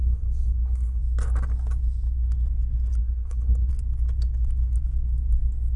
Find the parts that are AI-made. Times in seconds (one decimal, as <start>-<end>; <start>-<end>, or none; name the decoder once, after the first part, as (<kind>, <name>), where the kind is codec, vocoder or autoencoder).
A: 0.0-1.0 (codec, SNAC); 3.0-3.7